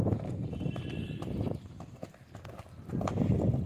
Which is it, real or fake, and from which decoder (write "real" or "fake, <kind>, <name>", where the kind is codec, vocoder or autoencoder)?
real